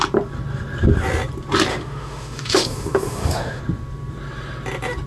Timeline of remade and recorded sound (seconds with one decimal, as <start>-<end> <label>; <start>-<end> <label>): 0.0-1.7 recorded; 1.7-3.6 remade; 3.6-5.1 recorded